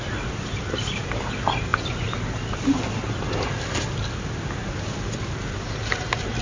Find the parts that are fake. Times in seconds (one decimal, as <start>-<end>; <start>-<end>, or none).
none